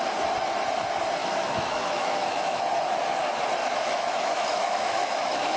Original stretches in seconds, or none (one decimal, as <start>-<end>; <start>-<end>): 0.0-1.2; 2.6-3.6